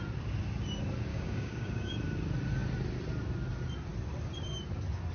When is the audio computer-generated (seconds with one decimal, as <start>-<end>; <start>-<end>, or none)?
1.1-1.9